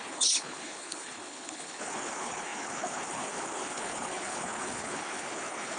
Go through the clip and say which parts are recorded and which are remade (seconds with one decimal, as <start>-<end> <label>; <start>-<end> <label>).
0.0-5.8 remade